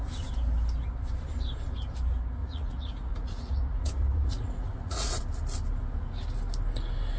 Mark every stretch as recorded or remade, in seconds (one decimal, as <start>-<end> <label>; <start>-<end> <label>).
0.0-2.4 recorded; 2.4-5.2 remade; 5.2-7.2 recorded